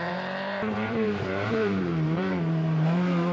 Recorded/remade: remade